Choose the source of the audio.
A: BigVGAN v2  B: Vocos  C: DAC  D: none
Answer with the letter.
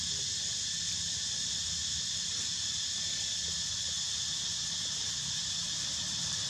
D